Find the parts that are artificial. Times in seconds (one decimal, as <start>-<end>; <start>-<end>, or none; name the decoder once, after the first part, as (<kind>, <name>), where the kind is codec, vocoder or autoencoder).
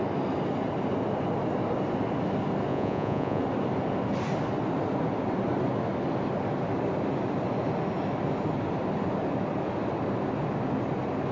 2.7-3.4 (vocoder, Vocos)